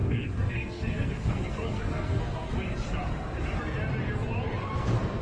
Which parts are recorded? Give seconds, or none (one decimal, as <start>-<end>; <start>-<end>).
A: 2.5-4.6